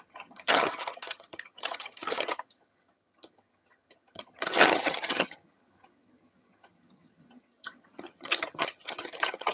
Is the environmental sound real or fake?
fake